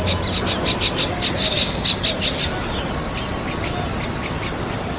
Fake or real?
real